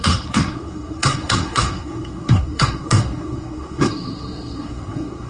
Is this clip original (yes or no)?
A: no